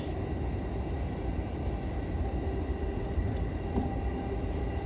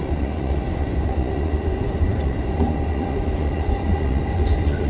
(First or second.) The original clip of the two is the first